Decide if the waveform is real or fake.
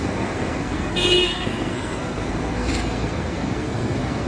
fake